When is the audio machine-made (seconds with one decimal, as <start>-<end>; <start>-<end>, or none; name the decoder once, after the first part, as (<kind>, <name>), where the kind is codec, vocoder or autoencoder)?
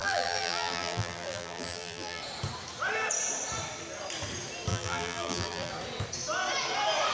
0.0-2.2 (vocoder, BigVGAN v2); 4.7-5.7